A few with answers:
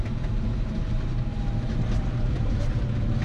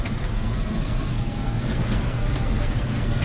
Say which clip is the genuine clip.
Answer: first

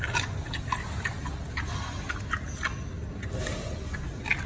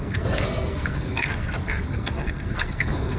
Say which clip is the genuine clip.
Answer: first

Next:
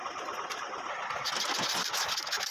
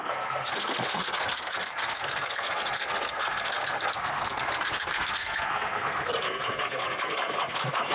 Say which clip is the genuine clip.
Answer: first